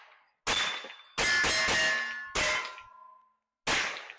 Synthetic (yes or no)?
no